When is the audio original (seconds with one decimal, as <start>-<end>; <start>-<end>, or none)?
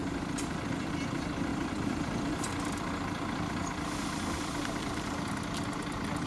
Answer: 0.9-1.5; 5.3-6.3